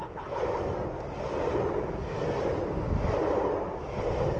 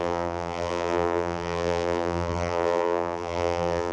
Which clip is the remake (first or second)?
second